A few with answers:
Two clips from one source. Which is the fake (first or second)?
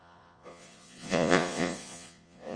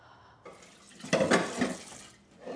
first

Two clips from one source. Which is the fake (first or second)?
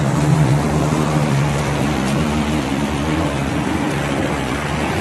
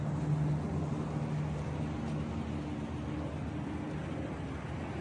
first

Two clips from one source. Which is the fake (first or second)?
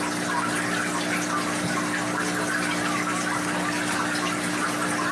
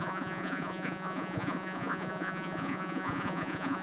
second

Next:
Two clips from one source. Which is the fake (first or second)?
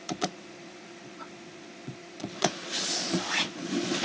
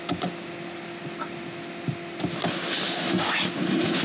first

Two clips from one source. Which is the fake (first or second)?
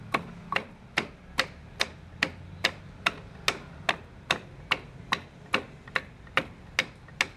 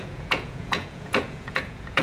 second